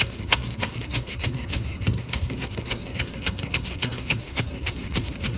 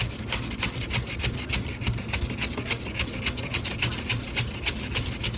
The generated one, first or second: first